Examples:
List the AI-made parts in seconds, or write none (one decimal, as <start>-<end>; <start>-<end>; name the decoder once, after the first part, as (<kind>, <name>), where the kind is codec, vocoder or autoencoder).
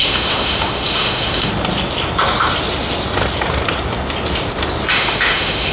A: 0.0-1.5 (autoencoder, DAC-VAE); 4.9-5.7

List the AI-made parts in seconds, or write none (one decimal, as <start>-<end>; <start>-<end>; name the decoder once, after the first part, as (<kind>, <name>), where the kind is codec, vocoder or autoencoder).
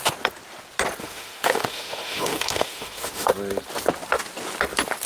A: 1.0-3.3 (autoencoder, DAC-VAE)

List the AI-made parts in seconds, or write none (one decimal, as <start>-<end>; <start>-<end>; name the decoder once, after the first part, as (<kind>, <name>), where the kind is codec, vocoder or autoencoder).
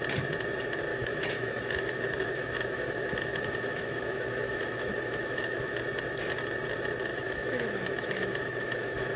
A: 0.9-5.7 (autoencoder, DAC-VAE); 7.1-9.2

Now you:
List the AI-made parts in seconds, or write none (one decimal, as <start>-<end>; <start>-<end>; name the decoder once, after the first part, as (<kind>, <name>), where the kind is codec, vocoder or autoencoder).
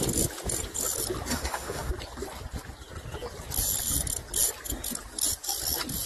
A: 1.3-1.9 (autoencoder, DAC-VAE)